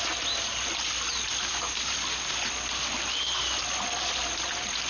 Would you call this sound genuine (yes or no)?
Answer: yes